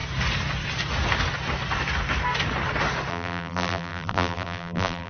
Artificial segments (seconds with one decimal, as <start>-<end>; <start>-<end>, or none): 3.1-5.1